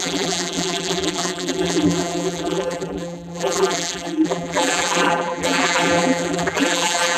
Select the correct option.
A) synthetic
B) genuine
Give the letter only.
A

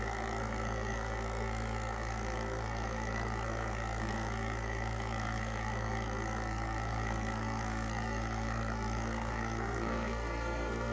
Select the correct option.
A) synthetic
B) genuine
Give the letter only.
A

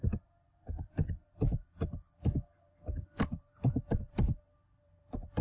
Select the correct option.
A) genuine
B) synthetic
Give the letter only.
B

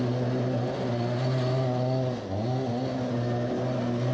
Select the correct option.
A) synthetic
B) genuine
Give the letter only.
B